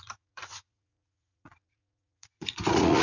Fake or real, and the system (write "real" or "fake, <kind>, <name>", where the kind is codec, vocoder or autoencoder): fake, vocoder, Vocos